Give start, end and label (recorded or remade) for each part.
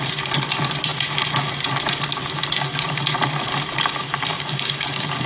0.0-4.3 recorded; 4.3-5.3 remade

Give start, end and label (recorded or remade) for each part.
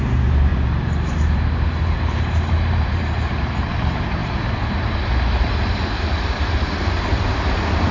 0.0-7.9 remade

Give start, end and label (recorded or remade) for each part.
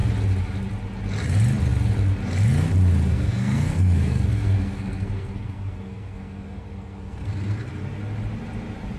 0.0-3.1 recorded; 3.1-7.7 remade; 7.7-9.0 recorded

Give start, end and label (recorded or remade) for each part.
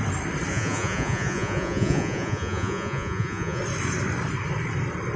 0.0-0.5 recorded; 0.5-3.6 remade; 3.6-5.2 recorded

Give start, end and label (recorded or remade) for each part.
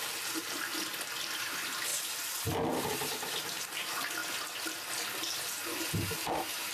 0.0-0.7 remade; 0.7-1.4 recorded; 1.4-1.9 remade; 1.9-2.9 recorded; 2.9-4.2 remade; 4.2-5.2 recorded; 5.2-6.7 remade